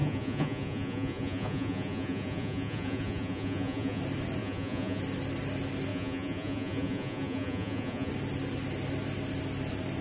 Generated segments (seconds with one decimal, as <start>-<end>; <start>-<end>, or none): 0.0-4.0; 4.4-5.0; 5.9-8.1